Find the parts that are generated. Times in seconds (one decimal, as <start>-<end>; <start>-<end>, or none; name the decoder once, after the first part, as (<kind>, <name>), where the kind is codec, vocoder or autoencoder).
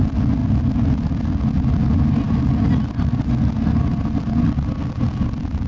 none